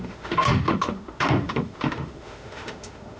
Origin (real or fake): fake